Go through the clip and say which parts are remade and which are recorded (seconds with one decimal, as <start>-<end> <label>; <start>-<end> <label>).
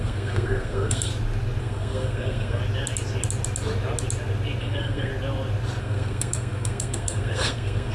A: 0.0-1.1 remade; 1.1-1.6 recorded; 1.6-2.6 remade; 2.6-4.6 recorded; 4.6-5.1 remade; 5.1-5.8 recorded; 5.8-7.9 remade